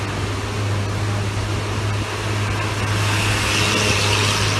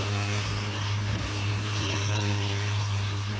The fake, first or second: second